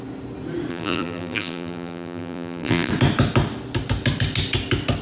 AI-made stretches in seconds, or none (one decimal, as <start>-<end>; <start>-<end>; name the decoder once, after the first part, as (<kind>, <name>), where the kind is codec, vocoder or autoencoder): 0.7-2.9 (vocoder, BigVGAN v2)